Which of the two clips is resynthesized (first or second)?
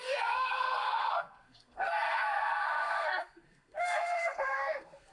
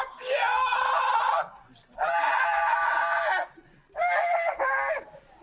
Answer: first